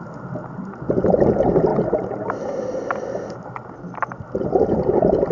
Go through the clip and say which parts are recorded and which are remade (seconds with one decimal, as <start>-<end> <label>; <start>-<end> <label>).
0.0-5.3 recorded